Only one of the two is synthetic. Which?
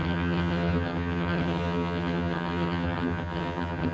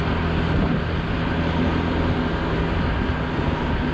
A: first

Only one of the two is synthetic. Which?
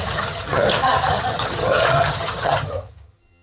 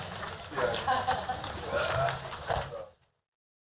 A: first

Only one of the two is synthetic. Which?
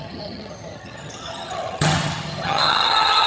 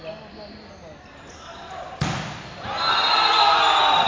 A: first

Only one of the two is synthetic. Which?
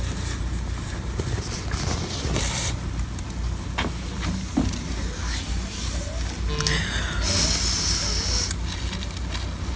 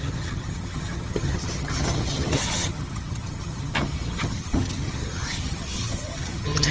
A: second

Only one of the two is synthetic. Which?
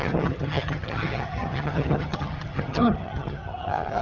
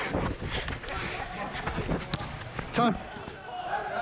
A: first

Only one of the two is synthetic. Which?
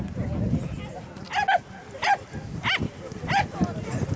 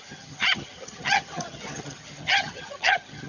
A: second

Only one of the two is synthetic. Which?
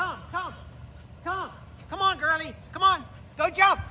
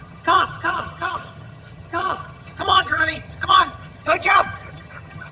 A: second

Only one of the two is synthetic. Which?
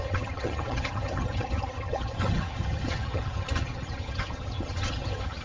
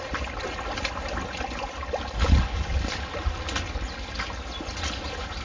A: first